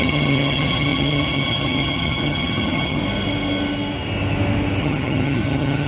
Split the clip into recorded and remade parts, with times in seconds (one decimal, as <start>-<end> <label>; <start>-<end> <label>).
0.0-3.0 remade; 3.0-4.8 recorded; 4.8-5.9 remade